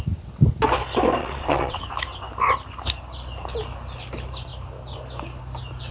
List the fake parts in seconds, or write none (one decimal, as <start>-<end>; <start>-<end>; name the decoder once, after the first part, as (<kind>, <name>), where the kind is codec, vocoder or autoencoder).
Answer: 1.2-1.8 (vocoder, WaveNeXt)